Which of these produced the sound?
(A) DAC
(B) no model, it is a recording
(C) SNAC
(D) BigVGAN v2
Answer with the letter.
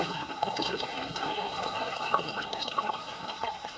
C